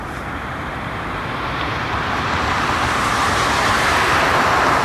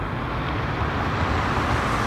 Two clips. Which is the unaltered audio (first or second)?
second